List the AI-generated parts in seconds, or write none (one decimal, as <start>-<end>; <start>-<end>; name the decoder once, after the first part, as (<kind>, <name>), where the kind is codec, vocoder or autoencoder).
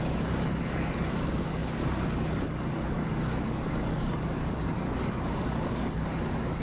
0.0-6.6 (codec, DAC)